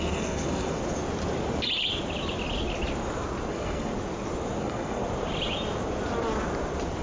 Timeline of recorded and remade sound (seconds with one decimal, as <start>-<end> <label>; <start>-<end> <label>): 0.0-0.8 remade; 0.8-3.5 recorded; 3.5-3.9 remade; 3.9-4.6 recorded; 4.6-5.0 remade; 5.0-7.0 recorded